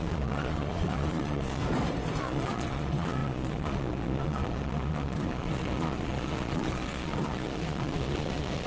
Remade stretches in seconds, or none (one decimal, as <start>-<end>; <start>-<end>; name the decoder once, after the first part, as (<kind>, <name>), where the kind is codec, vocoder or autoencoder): 0.0-1.6 (vocoder, Vocos); 2.2-8.7

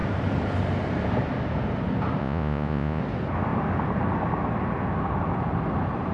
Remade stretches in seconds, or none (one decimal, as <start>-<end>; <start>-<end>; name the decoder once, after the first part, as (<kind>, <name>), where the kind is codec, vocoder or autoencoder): 2.2-3.0 (vocoder, Vocos)